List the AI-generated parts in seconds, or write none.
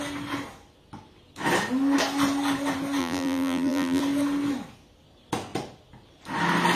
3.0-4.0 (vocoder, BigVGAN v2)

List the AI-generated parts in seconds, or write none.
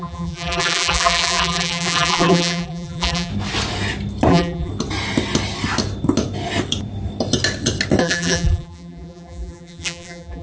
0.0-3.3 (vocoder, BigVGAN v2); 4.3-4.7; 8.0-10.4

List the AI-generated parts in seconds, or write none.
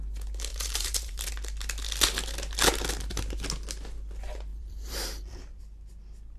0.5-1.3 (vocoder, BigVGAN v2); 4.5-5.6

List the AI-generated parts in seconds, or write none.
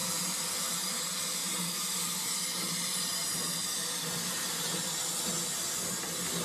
none